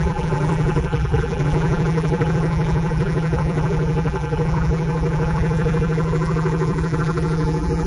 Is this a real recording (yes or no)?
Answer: no